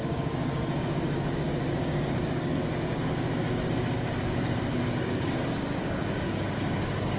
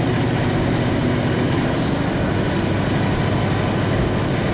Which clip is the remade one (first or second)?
first